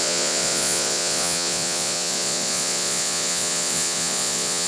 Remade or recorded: remade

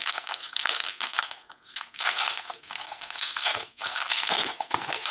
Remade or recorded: remade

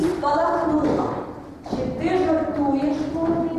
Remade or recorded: recorded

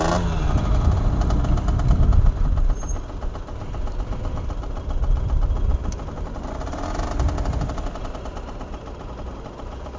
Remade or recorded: recorded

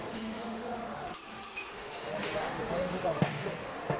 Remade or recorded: remade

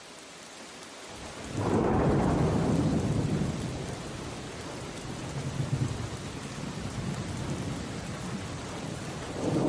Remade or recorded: remade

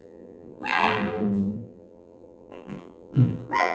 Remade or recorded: remade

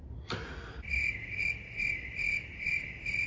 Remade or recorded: recorded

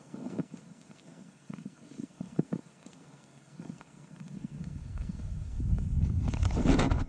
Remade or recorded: remade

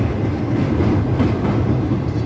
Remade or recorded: recorded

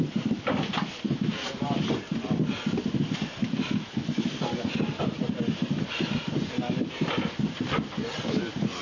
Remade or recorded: recorded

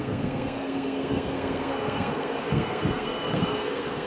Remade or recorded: remade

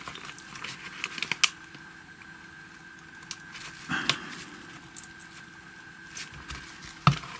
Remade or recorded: recorded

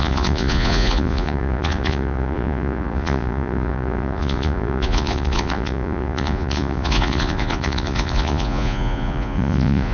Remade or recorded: remade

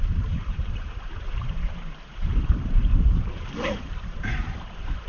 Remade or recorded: remade